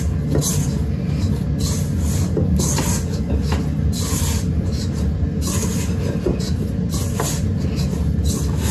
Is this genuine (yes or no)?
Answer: yes